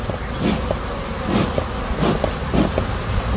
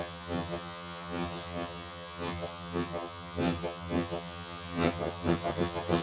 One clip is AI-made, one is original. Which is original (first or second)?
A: first